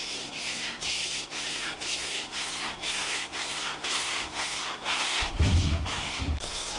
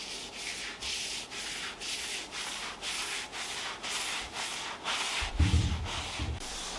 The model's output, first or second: first